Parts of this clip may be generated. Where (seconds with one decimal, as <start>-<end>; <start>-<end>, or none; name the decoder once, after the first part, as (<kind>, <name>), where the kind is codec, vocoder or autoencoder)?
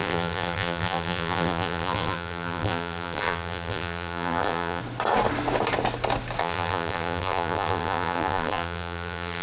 0.0-4.8 (vocoder, BigVGAN v2); 6.4-9.4